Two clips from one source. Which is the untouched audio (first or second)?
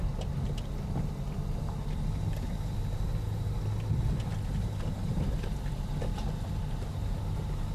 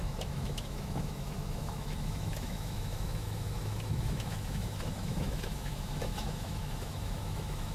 first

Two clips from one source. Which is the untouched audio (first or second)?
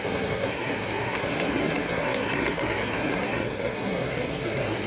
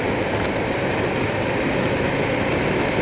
second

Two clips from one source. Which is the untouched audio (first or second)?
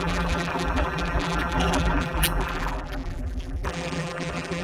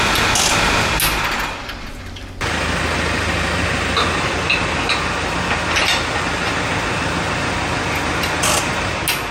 second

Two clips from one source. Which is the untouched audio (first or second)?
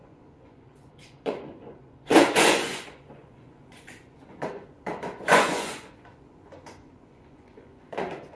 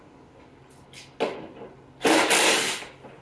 second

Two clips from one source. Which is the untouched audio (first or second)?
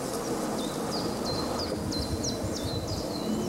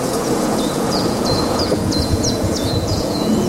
first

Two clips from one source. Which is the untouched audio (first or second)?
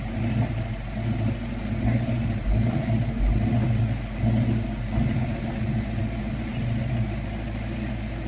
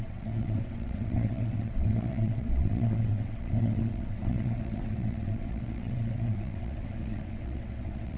first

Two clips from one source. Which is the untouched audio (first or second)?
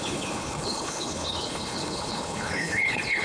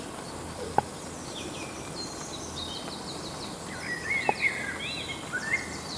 second